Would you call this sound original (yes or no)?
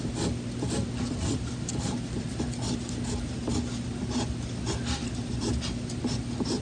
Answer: yes